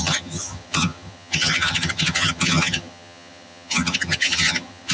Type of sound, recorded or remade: remade